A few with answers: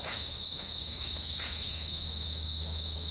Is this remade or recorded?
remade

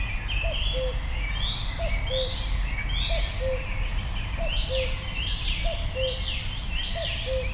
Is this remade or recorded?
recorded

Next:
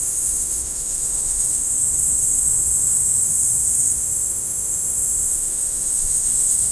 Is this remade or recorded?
remade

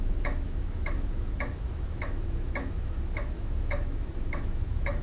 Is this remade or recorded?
remade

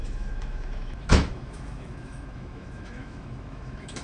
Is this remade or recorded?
remade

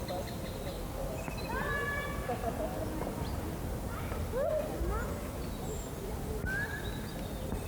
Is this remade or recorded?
recorded